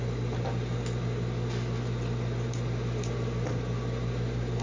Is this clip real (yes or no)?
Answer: yes